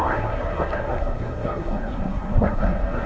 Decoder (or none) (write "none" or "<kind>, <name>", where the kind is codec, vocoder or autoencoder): codec, SNAC